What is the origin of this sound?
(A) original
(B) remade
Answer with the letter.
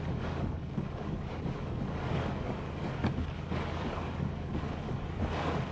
B